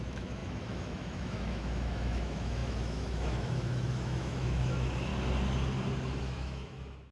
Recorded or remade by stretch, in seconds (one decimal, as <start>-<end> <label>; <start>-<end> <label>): 0.0-5.1 remade; 5.1-6.2 recorded; 6.2-7.1 remade